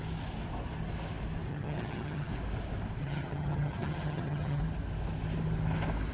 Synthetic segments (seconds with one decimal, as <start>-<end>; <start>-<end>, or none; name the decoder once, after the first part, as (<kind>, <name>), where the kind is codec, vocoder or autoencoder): 1.5-2.3 (vocoder, HiFi-GAN); 3.0-4.6